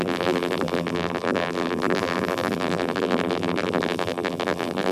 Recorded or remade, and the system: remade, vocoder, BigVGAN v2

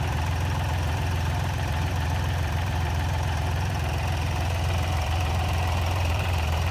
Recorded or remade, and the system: remade, vocoder, BigVGAN v2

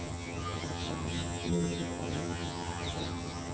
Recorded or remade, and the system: remade, vocoder, HiFi-GAN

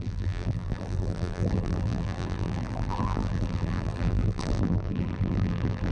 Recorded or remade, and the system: remade, vocoder, BigVGAN v2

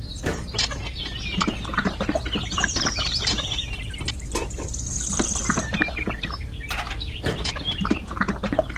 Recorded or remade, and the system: remade, vocoder, BigVGAN v2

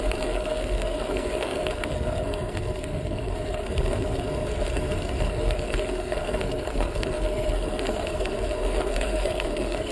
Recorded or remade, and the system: remade, codec, SNAC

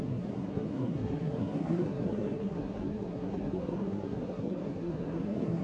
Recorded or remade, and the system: remade, codec, SNAC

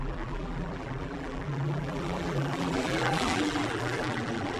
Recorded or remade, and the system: remade, vocoder, BigVGAN v2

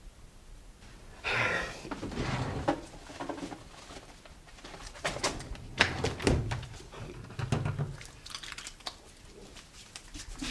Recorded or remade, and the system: recorded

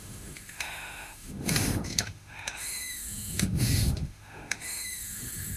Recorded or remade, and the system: remade, autoencoder, DAC-VAE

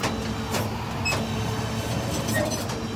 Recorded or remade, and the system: recorded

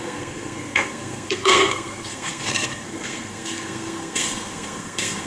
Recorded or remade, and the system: remade, codec, SNAC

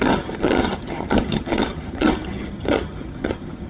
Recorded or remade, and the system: remade, vocoder, HiFi-GAN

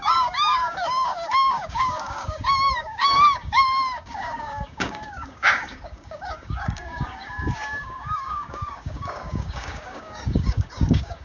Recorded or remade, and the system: remade, codec, DAC